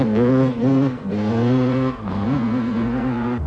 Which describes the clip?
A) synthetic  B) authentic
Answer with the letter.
A